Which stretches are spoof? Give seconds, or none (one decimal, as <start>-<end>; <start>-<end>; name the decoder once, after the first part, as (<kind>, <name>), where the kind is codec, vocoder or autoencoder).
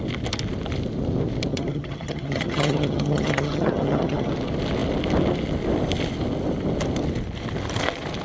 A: 1.5-4.3 (vocoder, HiFi-GAN)